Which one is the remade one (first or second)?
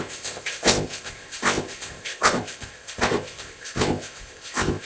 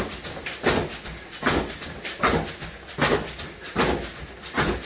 first